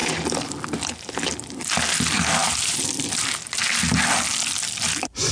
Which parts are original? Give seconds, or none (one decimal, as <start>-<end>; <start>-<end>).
0.0-2.4; 3.2-5.3